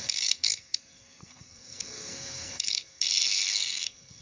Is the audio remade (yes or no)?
yes